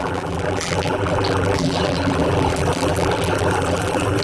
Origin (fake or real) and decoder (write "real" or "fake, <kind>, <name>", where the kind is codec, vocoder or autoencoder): fake, vocoder, BigVGAN v2